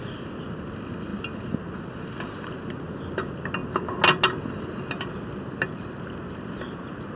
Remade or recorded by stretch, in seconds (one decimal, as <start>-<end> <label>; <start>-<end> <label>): 0.0-7.2 recorded